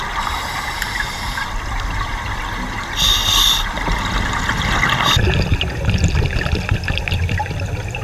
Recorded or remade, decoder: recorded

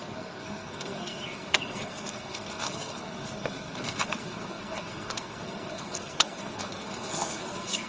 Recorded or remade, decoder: remade, codec, SNAC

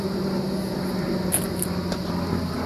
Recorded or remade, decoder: recorded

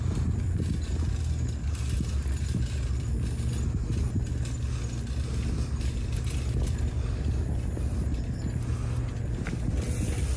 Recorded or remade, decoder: recorded